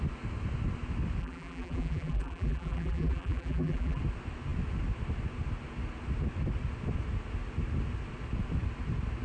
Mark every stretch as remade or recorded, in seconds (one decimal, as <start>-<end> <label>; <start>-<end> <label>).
0.0-1.2 recorded; 1.2-4.0 remade; 4.0-9.2 recorded